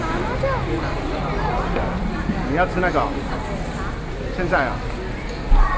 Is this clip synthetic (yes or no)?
no